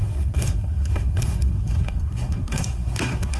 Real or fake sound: fake